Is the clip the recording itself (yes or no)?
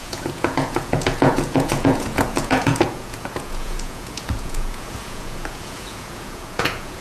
no